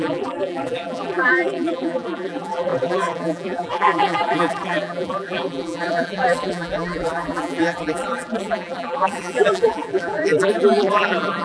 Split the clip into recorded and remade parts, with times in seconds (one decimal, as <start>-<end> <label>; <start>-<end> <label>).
0.0-11.4 remade